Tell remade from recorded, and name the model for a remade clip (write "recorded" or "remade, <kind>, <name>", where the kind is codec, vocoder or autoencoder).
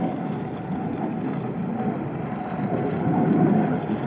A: recorded